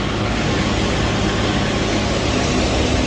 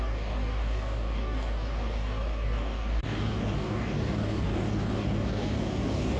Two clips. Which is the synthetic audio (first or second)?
second